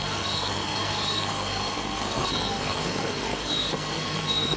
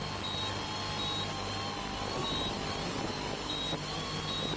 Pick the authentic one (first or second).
second